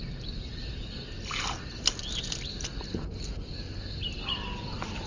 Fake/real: real